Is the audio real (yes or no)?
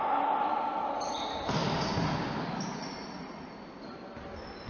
yes